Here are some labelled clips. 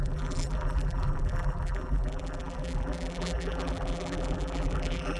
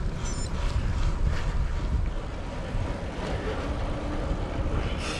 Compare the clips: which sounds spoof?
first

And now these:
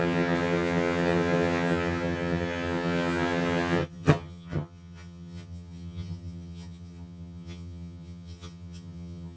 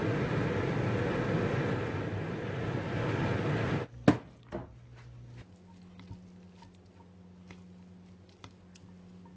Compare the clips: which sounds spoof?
first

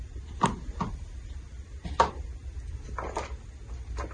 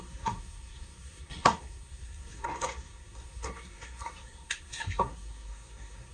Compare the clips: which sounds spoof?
second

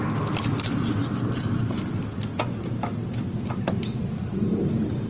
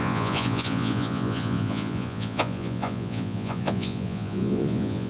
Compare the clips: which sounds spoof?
second